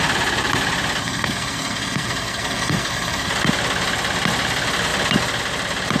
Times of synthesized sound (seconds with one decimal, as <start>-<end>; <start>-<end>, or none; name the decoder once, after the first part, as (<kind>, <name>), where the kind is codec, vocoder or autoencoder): 1.0-3.3 (codec, SNAC)